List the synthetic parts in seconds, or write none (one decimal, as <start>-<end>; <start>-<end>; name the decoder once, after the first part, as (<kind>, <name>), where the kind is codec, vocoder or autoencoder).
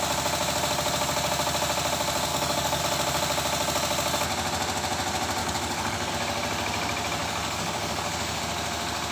2.3-2.8 (codec, DAC); 5.4-6.1; 7.2-8.4